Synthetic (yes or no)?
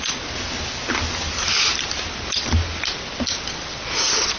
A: no